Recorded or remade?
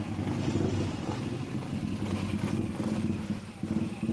recorded